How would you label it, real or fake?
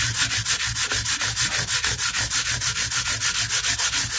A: real